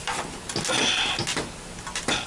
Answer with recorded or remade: recorded